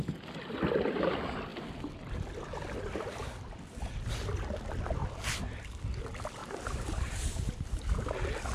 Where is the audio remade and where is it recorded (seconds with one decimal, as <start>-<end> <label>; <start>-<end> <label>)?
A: 0.0-6.4 recorded; 6.4-7.8 remade; 7.8-8.5 recorded